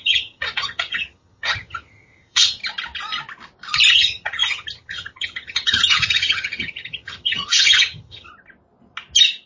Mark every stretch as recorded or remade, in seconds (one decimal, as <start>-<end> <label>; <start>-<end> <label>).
0.0-2.6 remade; 2.6-3.9 recorded; 3.9-8.3 remade; 8.3-9.5 recorded